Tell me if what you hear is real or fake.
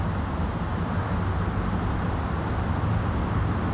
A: real